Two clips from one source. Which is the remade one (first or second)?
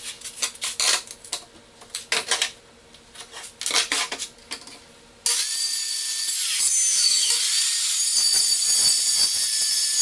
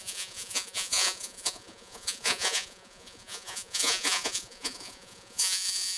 second